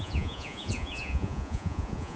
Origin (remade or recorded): remade